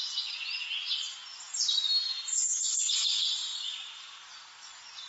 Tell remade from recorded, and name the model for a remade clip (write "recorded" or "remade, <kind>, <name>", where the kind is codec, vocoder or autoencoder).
recorded